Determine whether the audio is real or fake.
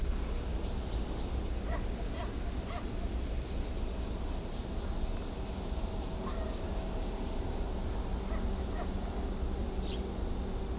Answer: real